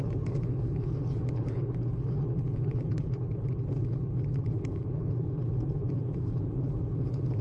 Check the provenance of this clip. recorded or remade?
remade